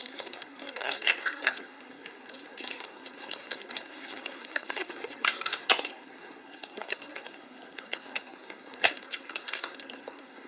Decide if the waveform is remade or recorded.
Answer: remade